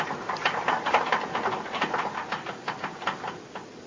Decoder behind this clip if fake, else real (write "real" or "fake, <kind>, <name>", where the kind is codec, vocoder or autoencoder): real